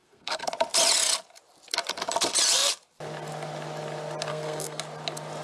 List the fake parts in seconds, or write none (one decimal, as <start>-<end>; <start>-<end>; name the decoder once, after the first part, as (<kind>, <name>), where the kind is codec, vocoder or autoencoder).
0.0-0.5 (codec, SNAC); 4.3-4.8